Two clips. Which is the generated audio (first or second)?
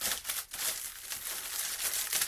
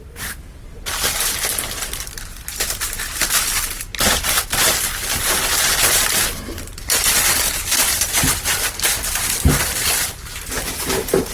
second